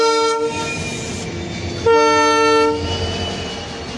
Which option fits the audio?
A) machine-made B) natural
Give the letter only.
B